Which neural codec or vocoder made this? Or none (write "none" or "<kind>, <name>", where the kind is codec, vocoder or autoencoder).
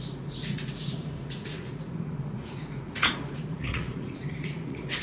vocoder, Vocos